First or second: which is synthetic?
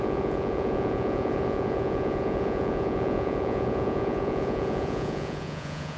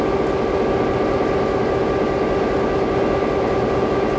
first